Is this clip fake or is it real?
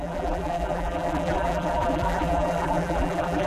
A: fake